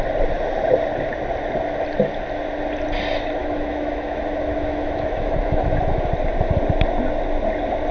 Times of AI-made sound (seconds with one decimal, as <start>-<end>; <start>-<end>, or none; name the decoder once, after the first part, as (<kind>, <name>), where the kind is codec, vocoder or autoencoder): 3.4-6.1 (autoencoder, DAC-VAE)